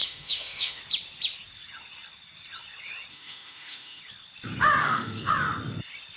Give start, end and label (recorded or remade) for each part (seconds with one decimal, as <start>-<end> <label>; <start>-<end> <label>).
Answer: 0.0-0.8 remade; 0.8-3.1 recorded; 3.1-4.0 remade; 4.0-4.8 recorded; 4.8-5.3 remade; 5.3-6.2 recorded